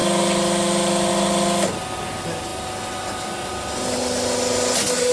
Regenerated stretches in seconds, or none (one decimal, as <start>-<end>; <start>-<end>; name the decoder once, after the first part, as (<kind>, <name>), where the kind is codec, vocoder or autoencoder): none